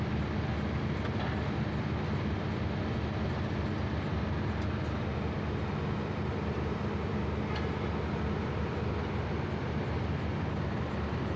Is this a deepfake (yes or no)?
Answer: no